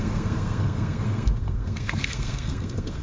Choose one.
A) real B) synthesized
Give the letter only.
B